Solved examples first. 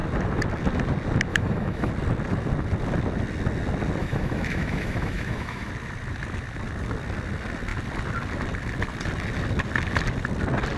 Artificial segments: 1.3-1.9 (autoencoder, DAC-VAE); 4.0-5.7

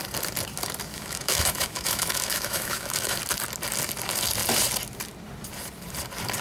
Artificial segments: 0.9-3.2 (autoencoder, DAC-VAE)